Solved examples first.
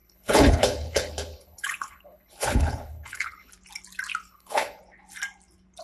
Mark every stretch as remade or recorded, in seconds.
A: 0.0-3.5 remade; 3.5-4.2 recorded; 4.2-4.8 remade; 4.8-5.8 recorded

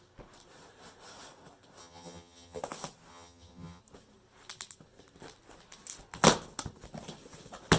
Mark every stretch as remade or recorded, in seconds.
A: 0.0-1.8 recorded; 1.8-2.6 remade; 2.6-3.1 recorded; 3.1-3.8 remade; 3.8-7.8 recorded